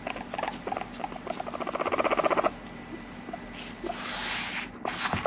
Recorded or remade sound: recorded